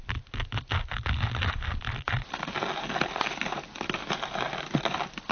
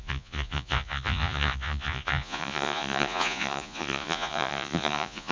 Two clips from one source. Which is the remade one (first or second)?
second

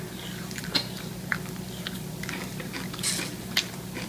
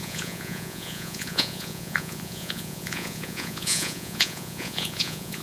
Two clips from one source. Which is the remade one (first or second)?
second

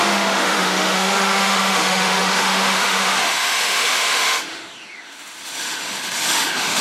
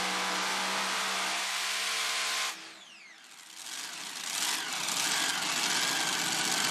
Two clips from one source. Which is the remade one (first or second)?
first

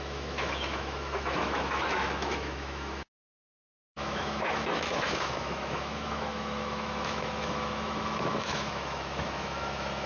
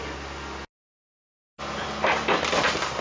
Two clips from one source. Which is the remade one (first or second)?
first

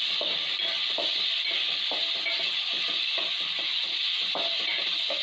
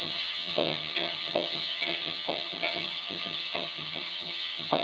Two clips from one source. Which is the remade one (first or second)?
second